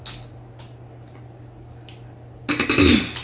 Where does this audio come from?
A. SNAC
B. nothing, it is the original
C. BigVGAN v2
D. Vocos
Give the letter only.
B